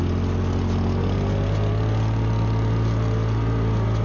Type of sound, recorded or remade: recorded